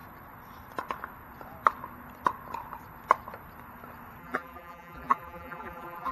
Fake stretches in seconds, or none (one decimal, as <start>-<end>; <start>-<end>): 4.2-6.1